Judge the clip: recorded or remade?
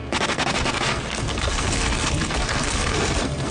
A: remade